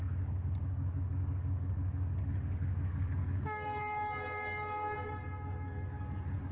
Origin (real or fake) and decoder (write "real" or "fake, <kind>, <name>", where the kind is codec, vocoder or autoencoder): fake, codec, DAC